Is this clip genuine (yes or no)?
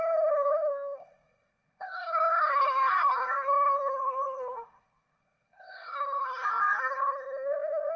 no